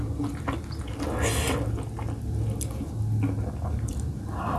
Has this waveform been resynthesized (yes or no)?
no